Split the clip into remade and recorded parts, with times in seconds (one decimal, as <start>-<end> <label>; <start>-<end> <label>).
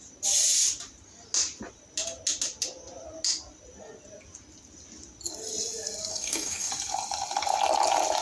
0.0-6.1 recorded; 6.1-6.7 remade; 6.7-8.2 recorded